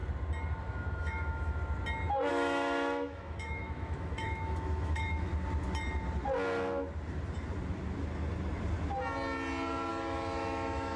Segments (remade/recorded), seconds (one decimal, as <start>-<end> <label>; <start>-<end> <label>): 0.0-0.6 recorded; 0.6-1.6 remade; 1.6-2.3 recorded; 2.3-5.3 remade; 5.3-9.9 recorded; 9.9-11.0 remade